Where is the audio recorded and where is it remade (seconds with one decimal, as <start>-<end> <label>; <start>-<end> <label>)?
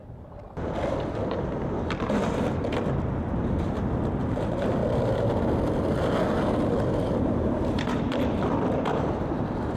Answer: 0.0-3.4 recorded; 3.4-4.8 remade; 4.8-7.2 recorded; 7.2-9.8 remade